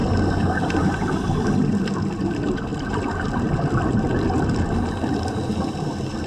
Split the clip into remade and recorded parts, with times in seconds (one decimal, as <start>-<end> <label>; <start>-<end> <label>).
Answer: 0.0-1.9 remade; 1.9-2.7 recorded; 2.7-4.2 remade; 4.2-6.3 recorded